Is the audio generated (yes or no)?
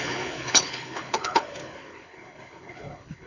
yes